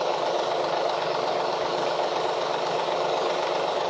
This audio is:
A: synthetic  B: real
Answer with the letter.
A